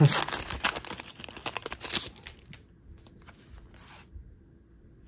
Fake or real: real